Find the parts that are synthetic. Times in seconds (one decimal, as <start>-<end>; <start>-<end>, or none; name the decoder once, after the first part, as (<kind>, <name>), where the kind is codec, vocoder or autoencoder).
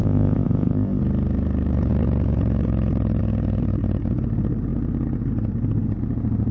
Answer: 0.0-1.0 (codec, ZipCodec)